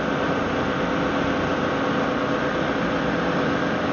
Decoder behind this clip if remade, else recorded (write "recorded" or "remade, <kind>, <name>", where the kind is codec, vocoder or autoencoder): recorded